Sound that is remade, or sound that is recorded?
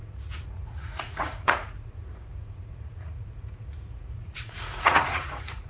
remade